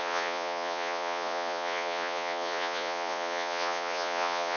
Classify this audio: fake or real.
fake